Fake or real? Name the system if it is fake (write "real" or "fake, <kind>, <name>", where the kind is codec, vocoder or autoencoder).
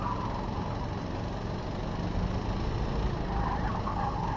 real